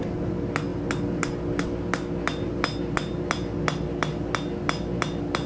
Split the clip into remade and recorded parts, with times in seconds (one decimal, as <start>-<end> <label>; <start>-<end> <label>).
0.0-5.5 recorded